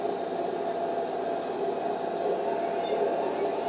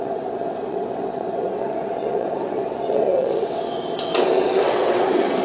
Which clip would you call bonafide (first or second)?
first